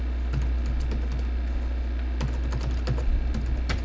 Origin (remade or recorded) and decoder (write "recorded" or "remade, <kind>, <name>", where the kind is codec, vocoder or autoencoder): recorded